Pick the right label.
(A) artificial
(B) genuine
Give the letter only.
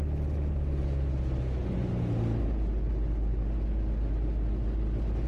B